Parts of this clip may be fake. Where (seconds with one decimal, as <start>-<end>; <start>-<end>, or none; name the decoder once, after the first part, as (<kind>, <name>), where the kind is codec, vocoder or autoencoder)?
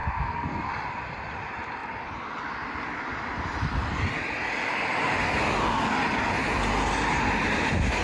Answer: 0.0-0.7 (codec, SNAC)